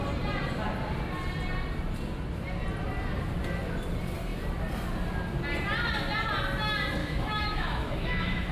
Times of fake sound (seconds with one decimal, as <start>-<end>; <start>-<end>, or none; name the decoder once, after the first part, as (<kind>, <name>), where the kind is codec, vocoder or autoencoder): 7.0-8.5 (autoencoder, DAC-VAE)